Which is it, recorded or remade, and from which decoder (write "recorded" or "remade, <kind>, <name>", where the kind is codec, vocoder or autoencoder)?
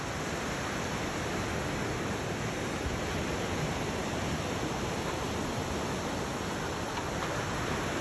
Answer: recorded